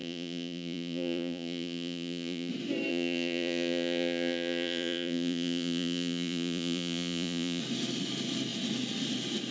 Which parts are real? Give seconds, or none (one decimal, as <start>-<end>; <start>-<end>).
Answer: 2.5-2.9; 7.6-9.5